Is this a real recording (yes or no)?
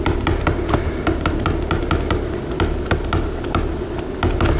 yes